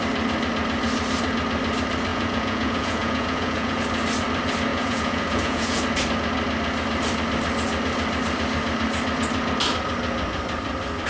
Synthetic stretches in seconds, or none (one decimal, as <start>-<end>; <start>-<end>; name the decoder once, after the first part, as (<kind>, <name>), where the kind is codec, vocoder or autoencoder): 2.1-3.8 (vocoder, Vocos); 4.7-5.8